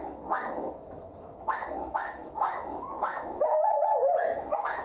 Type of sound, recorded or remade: remade